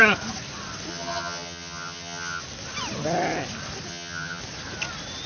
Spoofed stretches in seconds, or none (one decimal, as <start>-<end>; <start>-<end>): 0.9-2.4; 3.9-4.4